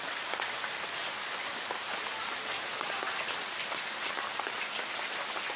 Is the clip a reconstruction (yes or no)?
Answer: no